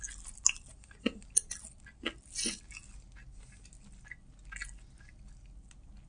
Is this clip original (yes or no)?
yes